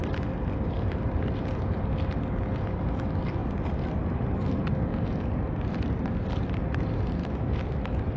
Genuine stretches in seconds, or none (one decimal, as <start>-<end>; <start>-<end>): 0.0-7.2